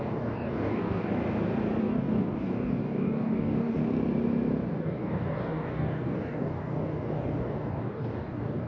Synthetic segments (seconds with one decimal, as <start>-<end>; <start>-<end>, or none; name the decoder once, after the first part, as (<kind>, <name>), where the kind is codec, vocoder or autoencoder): 0.0-1.1 (codec, DAC); 1.8-3.8; 4.8-8.7